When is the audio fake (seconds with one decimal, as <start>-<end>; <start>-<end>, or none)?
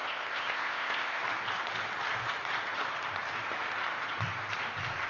0.0-1.2